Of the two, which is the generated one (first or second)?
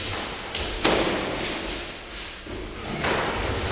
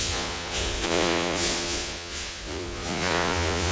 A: second